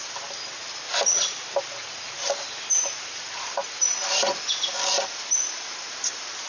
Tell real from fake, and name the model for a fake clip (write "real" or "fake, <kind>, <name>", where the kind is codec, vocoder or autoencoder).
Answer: real